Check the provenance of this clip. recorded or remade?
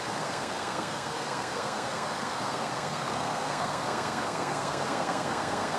remade